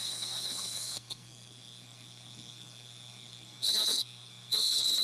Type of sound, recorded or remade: remade